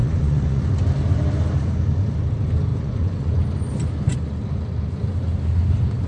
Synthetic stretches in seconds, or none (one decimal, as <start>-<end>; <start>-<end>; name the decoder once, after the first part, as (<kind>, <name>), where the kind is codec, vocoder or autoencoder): 0.0-0.6 (vocoder, Vocos); 2.7-3.3